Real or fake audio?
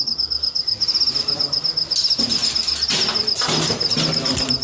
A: real